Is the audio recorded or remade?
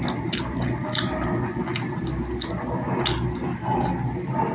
recorded